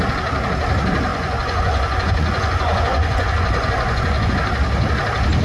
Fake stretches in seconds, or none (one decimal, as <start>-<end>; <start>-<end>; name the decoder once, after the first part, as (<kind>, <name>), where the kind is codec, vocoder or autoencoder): 1.1-4.3 (vocoder, Vocos)